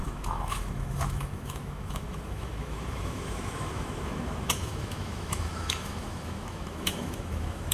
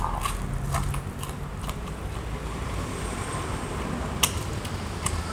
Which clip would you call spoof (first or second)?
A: first